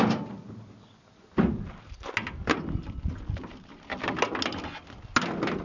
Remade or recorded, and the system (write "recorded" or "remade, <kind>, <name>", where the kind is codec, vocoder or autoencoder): recorded